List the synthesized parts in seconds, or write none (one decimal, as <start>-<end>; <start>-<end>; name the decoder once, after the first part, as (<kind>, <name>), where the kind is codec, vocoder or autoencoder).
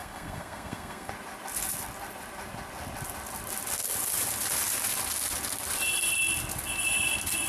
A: 0.0-1.1 (codec, SNAC)